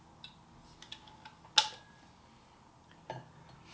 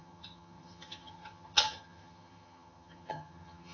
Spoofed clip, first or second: second